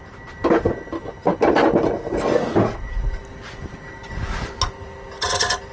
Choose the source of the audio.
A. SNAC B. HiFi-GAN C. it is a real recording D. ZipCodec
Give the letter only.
C